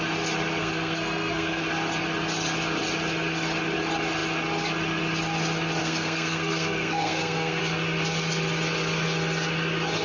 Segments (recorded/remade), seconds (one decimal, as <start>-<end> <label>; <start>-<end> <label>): 0.0-0.6 recorded; 0.6-1.6 remade; 1.6-5.8 recorded; 5.8-7.6 remade; 7.6-10.0 recorded